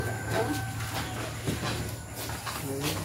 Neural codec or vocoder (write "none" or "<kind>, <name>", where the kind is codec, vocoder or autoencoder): none